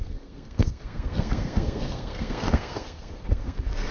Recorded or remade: remade